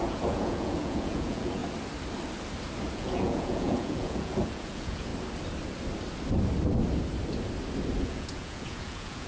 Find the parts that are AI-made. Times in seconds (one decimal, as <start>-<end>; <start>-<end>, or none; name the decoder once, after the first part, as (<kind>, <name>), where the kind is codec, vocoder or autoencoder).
0.0-1.6 (vocoder, Vocos); 2.9-5.1; 8.0-9.3